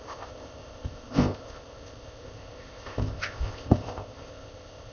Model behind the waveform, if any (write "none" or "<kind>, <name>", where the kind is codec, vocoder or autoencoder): codec, ZipCodec